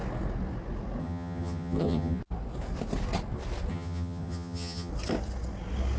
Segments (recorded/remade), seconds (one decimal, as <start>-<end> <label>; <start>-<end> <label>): 0.0-1.0 recorded; 1.0-2.2 remade; 2.2-3.7 recorded; 3.7-4.9 remade; 4.9-6.0 recorded